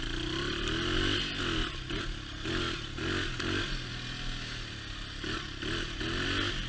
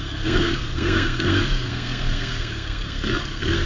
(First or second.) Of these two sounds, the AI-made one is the second